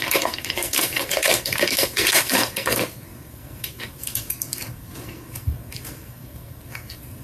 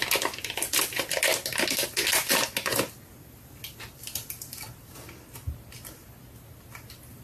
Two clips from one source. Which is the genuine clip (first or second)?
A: second